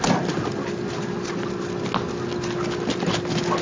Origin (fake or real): real